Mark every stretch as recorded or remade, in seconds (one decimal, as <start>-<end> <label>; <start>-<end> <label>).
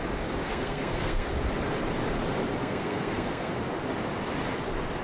0.0-0.4 recorded; 0.4-1.3 remade; 1.3-2.6 recorded; 2.6-3.5 remade; 3.5-5.0 recorded